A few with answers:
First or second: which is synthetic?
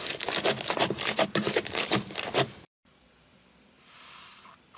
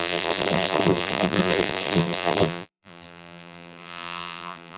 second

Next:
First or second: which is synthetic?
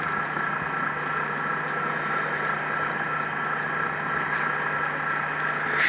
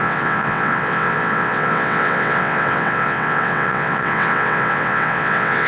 second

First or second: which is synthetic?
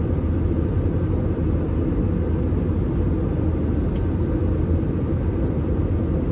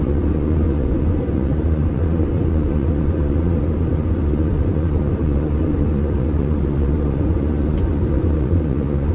second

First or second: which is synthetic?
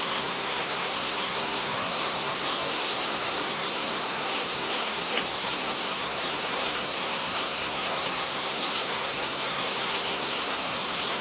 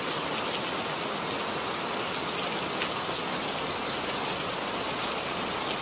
first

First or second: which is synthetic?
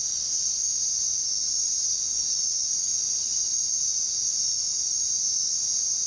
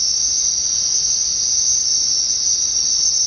second